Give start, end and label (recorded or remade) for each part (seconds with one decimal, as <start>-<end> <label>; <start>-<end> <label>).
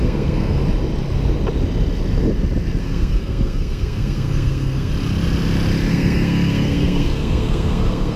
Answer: 0.0-0.6 remade; 0.6-2.8 recorded; 2.8-4.9 remade; 4.9-5.9 recorded; 5.9-8.2 remade